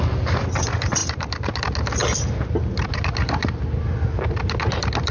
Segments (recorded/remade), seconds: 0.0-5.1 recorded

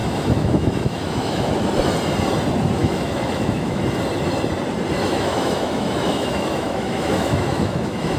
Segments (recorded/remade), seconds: 0.0-1.5 remade; 1.5-2.8 recorded; 2.8-3.8 remade; 3.8-5.1 recorded; 5.1-8.2 remade

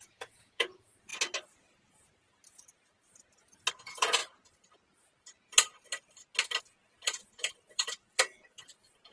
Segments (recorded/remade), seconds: 0.0-1.1 remade; 1.1-3.7 recorded; 3.7-4.2 remade; 4.2-6.6 recorded; 6.6-9.1 remade